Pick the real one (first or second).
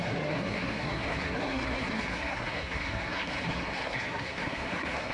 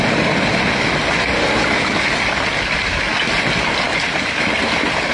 second